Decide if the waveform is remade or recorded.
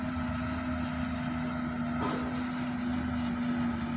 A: recorded